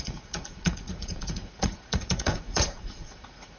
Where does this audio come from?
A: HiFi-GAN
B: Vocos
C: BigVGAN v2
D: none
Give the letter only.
B